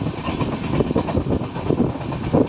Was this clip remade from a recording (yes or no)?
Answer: no